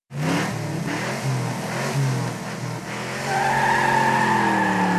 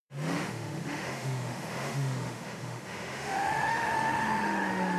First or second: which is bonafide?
first